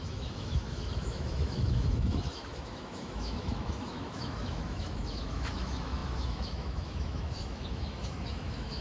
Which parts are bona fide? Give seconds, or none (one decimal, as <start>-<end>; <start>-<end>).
none